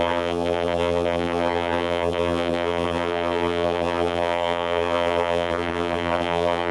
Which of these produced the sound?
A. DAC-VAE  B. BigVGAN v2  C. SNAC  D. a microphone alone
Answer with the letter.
B